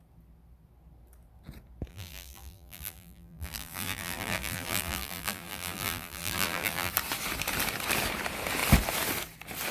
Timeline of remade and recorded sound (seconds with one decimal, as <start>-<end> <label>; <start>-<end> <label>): 0.0-1.9 recorded; 1.9-6.9 remade; 6.9-9.7 recorded